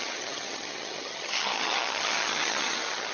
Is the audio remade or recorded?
remade